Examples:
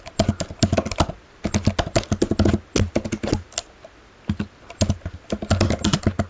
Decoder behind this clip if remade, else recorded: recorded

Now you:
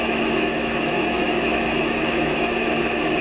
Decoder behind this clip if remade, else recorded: remade, autoencoder, DAC-VAE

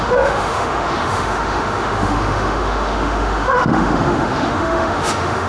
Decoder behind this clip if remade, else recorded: remade, autoencoder, DAC-VAE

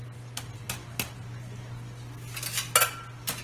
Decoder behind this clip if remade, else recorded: recorded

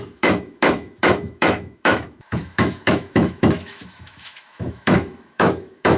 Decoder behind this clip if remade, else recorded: remade, autoencoder, DAC-VAE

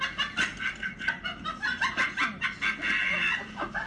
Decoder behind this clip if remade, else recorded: recorded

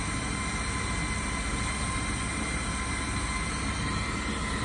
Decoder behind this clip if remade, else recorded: recorded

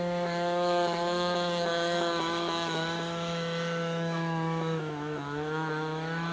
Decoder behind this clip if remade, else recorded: remade, autoencoder, DAC-VAE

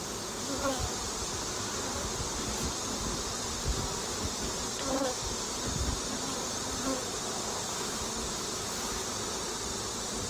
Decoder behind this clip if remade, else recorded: recorded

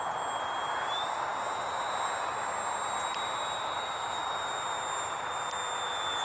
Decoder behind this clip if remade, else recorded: recorded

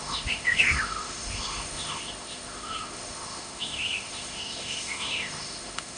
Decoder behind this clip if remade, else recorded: remade, autoencoder, DAC-VAE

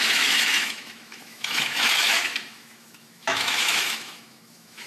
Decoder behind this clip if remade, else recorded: remade, autoencoder, DAC-VAE